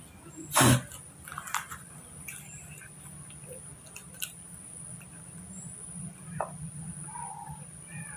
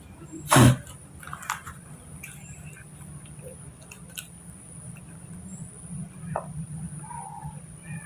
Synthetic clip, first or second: second